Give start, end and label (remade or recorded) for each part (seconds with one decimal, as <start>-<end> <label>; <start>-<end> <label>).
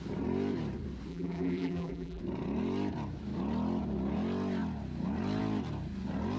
0.0-1.1 recorded; 1.1-2.2 remade; 2.2-6.4 recorded